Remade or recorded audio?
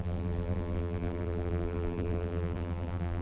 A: remade